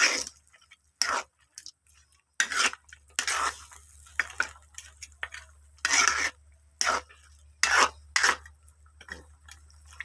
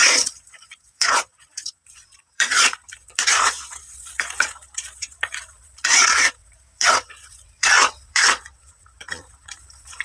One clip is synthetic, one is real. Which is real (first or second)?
first